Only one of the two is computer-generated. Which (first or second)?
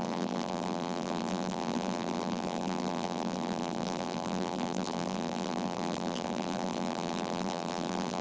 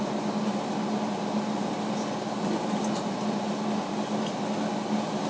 first